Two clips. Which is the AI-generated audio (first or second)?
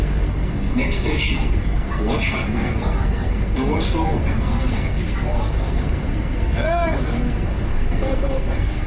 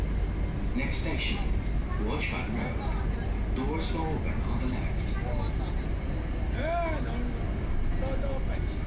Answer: first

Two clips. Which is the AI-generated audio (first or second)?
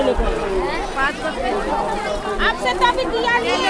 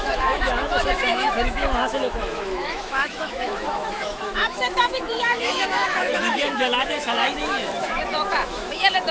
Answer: second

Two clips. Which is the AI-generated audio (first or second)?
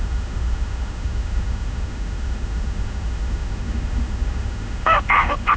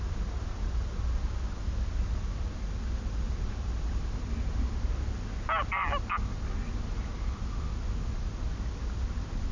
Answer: first